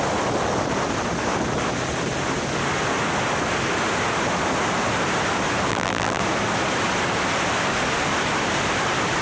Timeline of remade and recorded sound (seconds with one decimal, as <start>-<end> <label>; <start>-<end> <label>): 0.0-5.7 recorded; 5.7-6.2 remade; 6.2-9.2 recorded